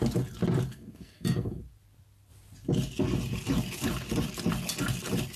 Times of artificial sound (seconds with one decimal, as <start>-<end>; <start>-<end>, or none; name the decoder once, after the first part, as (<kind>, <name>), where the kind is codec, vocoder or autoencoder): 0.7-1.6 (codec, SNAC)